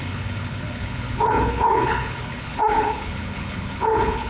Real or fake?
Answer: fake